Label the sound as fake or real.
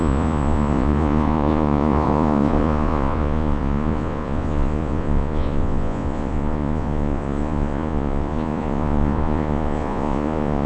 fake